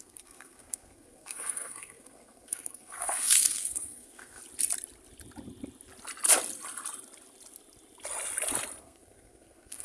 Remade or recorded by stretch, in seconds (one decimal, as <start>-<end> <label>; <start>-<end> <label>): 0.0-4.4 remade; 4.4-8.8 recorded; 8.8-9.8 remade